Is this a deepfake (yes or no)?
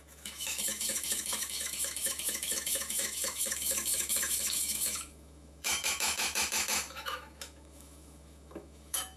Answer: yes